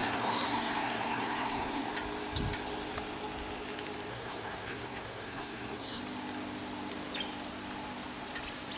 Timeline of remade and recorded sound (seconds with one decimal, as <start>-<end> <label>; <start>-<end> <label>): 0.0-1.9 remade; 1.9-4.1 recorded; 4.1-6.0 remade; 6.0-8.8 recorded